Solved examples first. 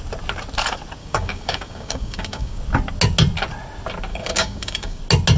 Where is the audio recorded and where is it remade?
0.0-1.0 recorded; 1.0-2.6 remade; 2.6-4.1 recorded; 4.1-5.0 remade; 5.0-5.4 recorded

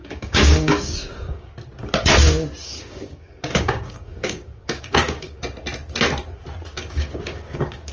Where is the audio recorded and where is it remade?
0.0-1.5 remade; 1.5-2.6 recorded; 2.6-5.4 remade; 5.4-6.7 recorded; 6.7-7.9 remade

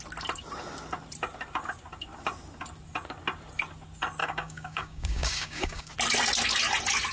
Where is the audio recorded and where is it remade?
0.0-4.2 recorded; 4.2-5.9 remade; 5.9-7.1 recorded

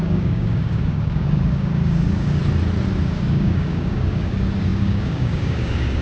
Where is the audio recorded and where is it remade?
0.0-2.4 remade; 2.4-3.0 recorded; 3.0-6.0 remade

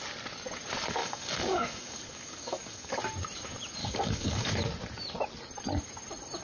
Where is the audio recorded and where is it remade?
0.0-1.0 recorded; 1.0-3.0 remade; 3.0-3.8 recorded; 3.8-4.5 remade; 4.5-6.4 recorded

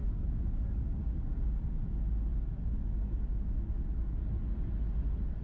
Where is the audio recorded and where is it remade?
0.0-1.0 recorded; 1.0-1.6 remade; 1.6-5.4 recorded